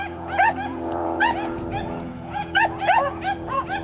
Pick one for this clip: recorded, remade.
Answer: remade